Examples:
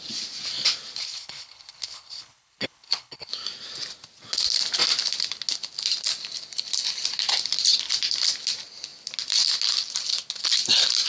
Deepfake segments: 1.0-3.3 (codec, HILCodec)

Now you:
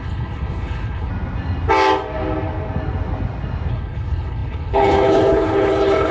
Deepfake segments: 0.0-1.1 (codec, HILCodec); 3.7-6.1

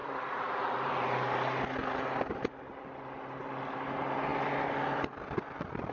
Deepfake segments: none

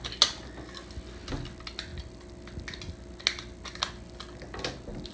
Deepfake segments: none

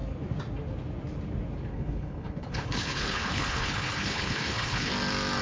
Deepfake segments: 1.7-4.9 (codec, HILCodec)

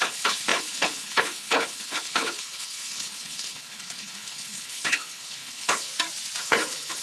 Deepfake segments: 0.0-5.9 (codec, HILCodec); 6.4-7.0

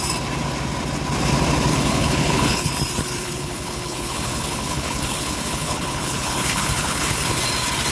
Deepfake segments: 1.7-2.7 (codec, HILCodec); 3.2-7.4